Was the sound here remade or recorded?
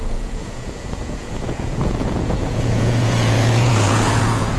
remade